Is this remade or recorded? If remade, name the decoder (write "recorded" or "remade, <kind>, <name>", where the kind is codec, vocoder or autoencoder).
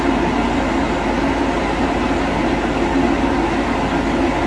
recorded